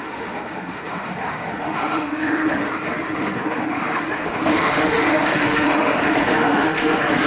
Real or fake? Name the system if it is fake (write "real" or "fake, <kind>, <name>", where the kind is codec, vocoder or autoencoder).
fake, autoencoder, DAC-VAE